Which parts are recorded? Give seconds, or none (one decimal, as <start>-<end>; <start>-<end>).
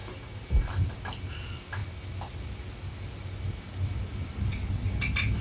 0.0-5.4